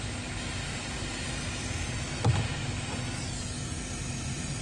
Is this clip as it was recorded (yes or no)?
yes